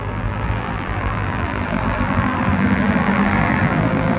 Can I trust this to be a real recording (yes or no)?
no